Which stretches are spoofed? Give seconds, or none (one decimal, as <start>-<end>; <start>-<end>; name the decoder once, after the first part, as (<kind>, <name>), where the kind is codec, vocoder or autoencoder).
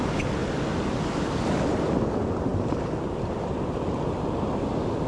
none